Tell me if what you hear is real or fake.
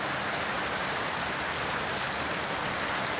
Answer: real